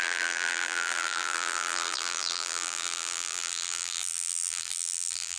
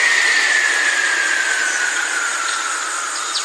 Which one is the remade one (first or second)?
first